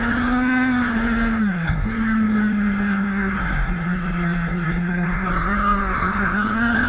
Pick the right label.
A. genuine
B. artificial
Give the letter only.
B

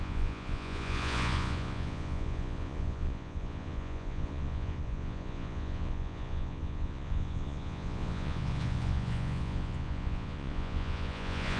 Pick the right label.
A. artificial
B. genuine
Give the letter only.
A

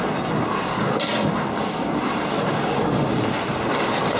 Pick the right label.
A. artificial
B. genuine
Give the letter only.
B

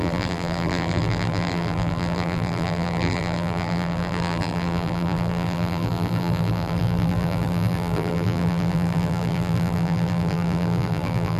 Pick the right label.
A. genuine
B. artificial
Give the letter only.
B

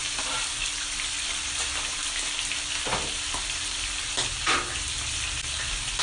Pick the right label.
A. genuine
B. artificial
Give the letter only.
A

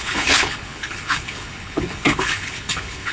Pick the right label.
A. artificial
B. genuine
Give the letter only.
A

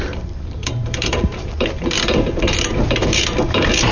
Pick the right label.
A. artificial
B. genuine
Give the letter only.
A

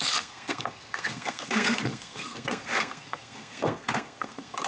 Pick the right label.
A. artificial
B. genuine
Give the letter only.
A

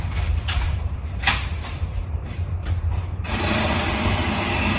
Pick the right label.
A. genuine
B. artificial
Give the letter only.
B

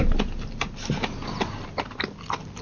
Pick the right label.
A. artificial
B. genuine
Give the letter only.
B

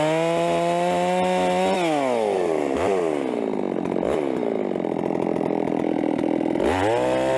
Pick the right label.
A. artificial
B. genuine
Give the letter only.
B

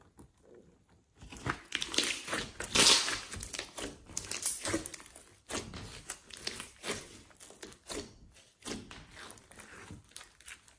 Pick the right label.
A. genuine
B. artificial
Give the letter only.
A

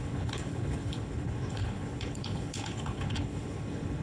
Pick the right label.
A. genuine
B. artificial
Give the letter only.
B